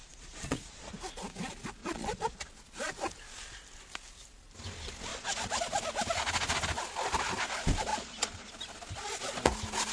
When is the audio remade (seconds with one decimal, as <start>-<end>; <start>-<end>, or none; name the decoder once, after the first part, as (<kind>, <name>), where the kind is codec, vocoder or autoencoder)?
0.0-1.0 (vocoder, Vocos); 1.8-2.5; 5.1-5.6; 7.9-8.5